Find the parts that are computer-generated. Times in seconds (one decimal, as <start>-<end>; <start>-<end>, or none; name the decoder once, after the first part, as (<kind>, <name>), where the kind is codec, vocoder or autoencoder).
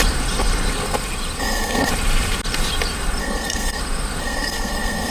1.4-1.9 (codec, SNAC); 3.2-3.8; 4.2-5.1